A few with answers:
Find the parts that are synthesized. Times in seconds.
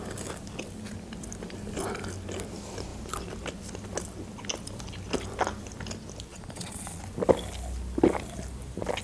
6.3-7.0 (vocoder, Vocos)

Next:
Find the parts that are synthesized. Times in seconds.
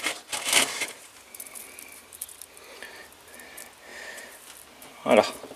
3.9-4.4 (vocoder, BigVGAN v2)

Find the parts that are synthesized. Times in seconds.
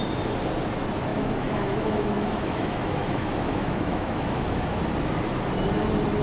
1.1-4.8 (autoencoder, DAC-VAE)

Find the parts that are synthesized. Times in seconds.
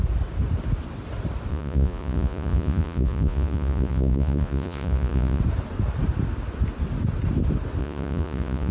1.5-5.4 (vocoder, Vocos); 7.8-8.7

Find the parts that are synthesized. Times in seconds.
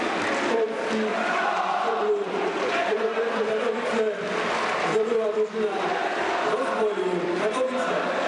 1.1-3.5 (vocoder, Vocos)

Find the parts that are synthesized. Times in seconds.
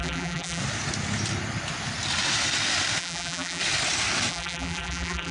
0.0-0.6 (vocoder, BigVGAN v2); 3.0-3.6; 4.3-5.3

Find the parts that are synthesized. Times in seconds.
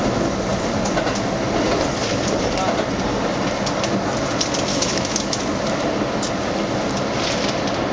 4.7-5.4 (autoencoder, DAC-VAE)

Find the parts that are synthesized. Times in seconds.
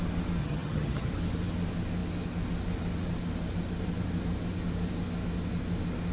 0.4-1.1 (vocoder, HiFi-GAN)